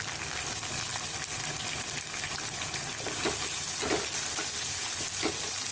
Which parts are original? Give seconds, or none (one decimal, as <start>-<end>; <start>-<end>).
0.0-5.7